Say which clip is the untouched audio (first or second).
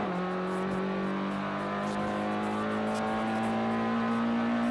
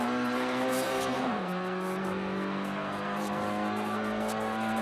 first